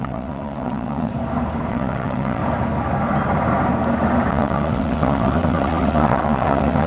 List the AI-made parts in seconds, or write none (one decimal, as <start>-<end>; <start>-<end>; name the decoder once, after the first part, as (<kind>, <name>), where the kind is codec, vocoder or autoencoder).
0.0-1.1 (vocoder, WaveNeXt); 1.7-2.4; 4.3-6.9